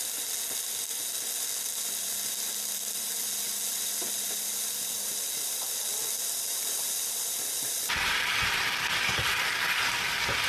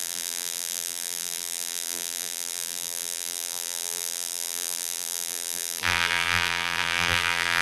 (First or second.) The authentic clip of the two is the first